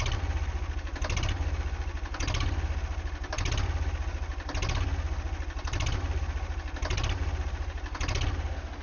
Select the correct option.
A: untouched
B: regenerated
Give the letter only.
A